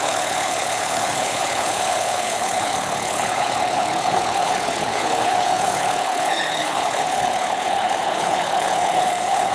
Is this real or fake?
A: fake